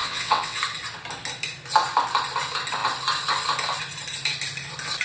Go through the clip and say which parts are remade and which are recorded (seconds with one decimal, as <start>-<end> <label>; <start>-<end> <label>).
0.0-0.6 remade; 0.6-5.0 recorded